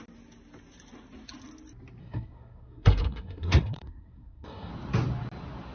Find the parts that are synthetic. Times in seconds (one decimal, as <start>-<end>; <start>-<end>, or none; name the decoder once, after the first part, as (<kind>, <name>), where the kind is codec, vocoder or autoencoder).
2.0-4.7 (codec, SNAC)